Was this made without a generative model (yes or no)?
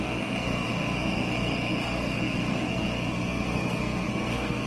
no